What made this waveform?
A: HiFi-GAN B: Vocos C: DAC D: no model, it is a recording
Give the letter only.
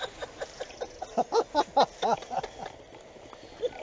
D